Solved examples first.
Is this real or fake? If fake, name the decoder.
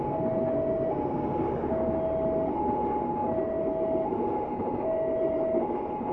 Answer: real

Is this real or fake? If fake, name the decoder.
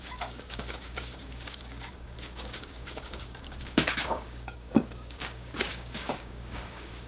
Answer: fake, codec, DAC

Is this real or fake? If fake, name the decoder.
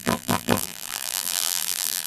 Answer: fake, vocoder, BigVGAN v2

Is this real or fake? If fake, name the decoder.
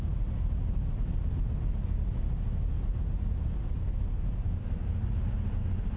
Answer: real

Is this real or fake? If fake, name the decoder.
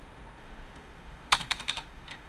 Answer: fake, autoencoder, DAC-VAE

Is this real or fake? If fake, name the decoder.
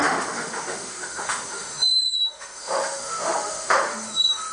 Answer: fake, autoencoder, DAC-VAE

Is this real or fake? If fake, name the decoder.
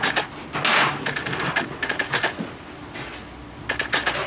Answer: real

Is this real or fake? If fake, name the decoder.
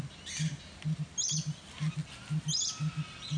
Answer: real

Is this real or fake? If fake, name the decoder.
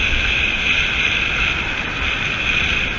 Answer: real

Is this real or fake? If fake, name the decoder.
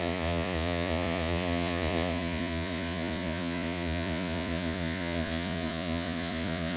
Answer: fake, vocoder, Vocos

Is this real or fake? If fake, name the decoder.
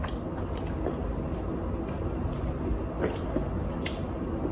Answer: real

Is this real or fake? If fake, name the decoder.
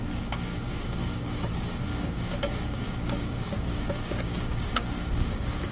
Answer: fake, codec, DAC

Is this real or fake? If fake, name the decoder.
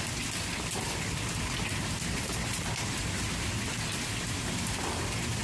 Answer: real